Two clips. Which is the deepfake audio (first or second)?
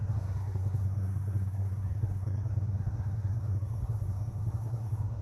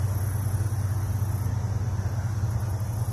first